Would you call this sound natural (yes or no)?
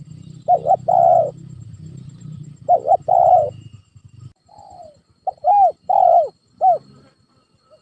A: yes